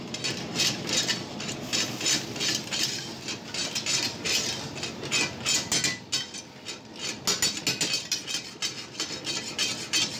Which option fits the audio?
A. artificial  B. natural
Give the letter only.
B